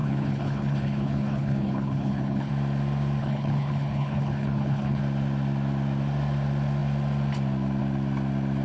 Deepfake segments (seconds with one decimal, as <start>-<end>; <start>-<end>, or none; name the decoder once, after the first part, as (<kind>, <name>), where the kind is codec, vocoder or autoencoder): 0.0-2.5 (codec, HILCodec); 3.2-5.0